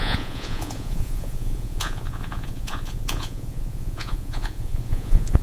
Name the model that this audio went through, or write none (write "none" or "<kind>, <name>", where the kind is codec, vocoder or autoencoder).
vocoder, Vocos